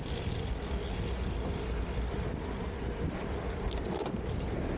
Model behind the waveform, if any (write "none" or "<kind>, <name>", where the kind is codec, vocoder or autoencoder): none